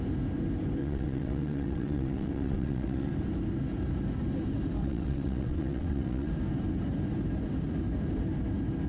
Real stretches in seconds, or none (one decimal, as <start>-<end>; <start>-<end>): 0.0-0.8; 3.1-4.8; 6.3-8.9